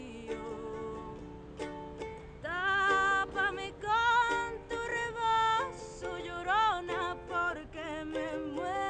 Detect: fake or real real